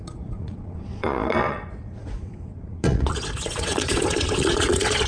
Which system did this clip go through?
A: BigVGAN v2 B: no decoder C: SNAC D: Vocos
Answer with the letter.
D